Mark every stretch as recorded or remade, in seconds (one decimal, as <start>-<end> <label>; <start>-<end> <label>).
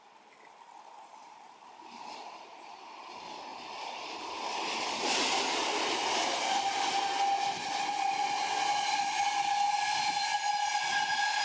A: 0.0-1.1 recorded; 1.1-3.0 remade; 3.0-11.4 recorded